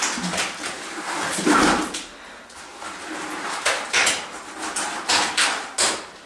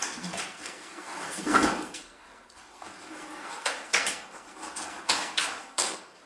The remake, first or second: second